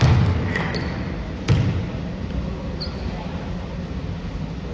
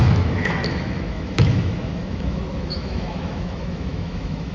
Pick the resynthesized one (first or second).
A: second